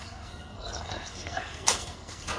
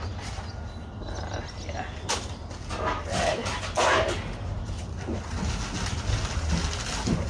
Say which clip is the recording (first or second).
second